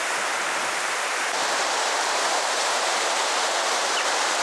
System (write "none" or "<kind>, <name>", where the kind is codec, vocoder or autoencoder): vocoder, BigVGAN v2